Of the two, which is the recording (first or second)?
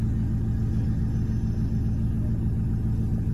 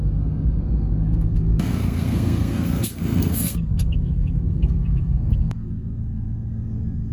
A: first